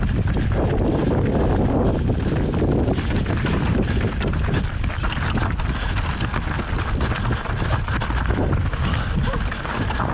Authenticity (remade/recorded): recorded